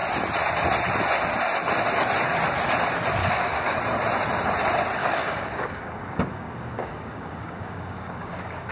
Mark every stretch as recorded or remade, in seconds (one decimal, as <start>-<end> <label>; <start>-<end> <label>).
0.0-3.2 recorded; 3.2-3.8 remade; 3.8-5.0 recorded; 5.0-8.7 remade

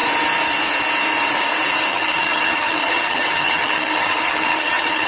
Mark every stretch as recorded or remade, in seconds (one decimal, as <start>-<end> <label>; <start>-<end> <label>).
0.0-1.9 recorded; 1.9-5.1 remade